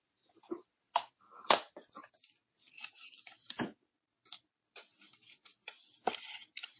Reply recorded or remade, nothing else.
remade